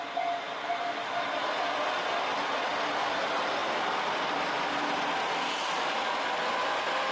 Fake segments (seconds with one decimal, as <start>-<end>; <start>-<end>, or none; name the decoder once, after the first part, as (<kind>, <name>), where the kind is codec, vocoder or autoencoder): 3.6-4.8 (vocoder, BigVGAN v2)